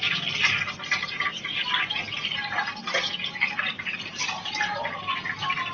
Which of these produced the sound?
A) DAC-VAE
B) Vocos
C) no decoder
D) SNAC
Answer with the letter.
C